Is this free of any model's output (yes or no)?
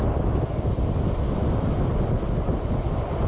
yes